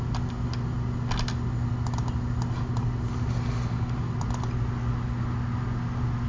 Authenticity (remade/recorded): recorded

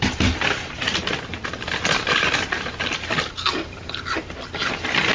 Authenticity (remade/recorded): remade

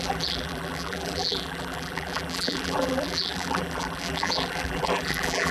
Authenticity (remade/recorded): remade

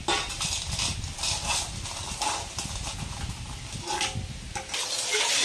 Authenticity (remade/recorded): recorded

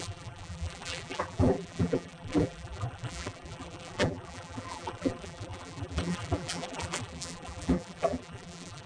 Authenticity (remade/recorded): remade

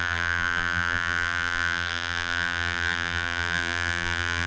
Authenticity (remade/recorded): remade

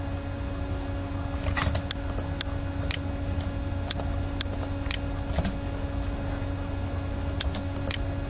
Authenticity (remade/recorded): recorded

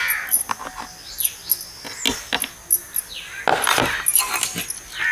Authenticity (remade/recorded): recorded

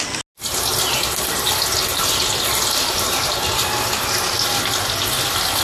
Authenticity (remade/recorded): recorded